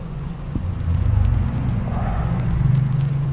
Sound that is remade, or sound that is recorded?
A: remade